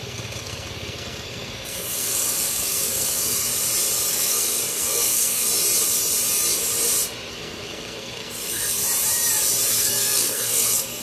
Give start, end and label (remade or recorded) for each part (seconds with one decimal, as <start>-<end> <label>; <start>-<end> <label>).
0.0-3.5 remade; 3.5-4.1 recorded; 4.1-5.5 remade; 5.5-7.3 recorded; 7.3-8.8 remade; 8.8-9.7 recorded; 9.7-11.0 remade